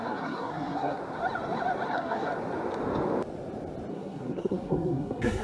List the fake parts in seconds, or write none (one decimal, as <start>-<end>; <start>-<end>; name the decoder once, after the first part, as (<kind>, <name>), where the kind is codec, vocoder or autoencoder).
0.0-1.0 (codec, SNAC); 1.9-2.3; 3.9-5.4

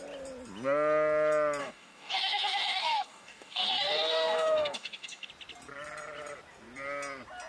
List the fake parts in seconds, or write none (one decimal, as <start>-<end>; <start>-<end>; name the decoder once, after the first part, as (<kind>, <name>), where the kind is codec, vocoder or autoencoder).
1.6-5.3 (codec, DAC)

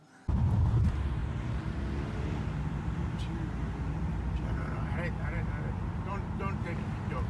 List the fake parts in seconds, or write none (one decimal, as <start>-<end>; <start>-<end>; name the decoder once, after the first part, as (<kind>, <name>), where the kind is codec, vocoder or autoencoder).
none

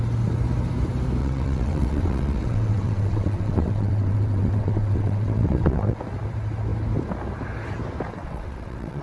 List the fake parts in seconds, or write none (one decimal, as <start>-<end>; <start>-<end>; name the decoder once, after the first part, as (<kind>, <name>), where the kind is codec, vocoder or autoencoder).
1.2-6.0 (vocoder, WaveNeXt); 8.2-9.0

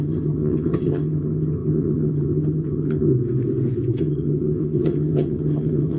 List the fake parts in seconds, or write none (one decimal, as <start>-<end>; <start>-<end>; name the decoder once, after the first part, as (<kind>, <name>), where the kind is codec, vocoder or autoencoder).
0.0-3.1 (vocoder, HiFi-GAN); 4.0-6.0